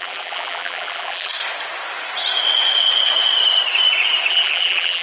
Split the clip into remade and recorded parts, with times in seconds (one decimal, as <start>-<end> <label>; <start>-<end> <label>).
0.0-1.3 remade; 1.3-4.3 recorded; 4.3-5.0 remade